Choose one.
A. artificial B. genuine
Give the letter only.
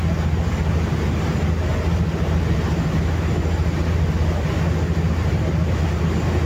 B